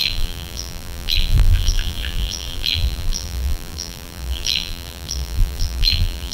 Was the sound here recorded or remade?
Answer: remade